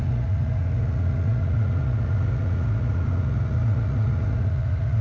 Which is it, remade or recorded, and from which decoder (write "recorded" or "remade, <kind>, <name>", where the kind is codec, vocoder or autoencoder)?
remade, vocoder, Vocos